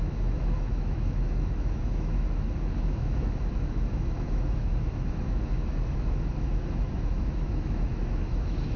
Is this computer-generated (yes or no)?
yes